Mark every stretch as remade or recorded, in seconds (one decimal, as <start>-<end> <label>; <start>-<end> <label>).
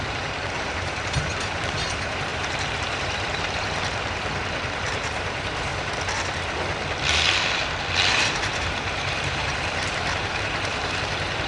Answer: 0.0-5.7 remade; 5.7-8.1 recorded; 8.1-11.5 remade